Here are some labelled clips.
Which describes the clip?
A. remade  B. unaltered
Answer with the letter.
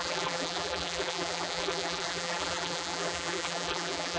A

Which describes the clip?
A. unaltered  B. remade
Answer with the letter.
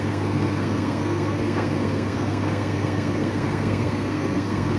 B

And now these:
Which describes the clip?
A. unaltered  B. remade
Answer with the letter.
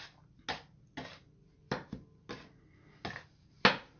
A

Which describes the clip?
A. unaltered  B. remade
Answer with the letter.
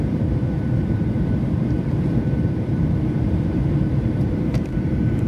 B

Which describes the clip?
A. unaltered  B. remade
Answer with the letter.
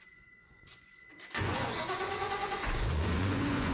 B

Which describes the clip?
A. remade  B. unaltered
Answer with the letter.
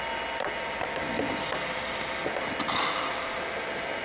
B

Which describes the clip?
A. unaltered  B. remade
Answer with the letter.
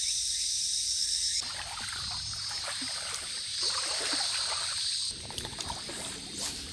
A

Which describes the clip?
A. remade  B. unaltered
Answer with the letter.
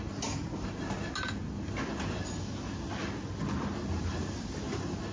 B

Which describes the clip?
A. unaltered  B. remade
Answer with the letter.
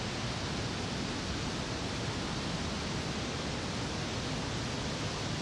A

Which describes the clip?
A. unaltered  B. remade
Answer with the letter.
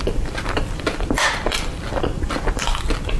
B